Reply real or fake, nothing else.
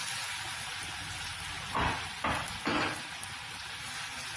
real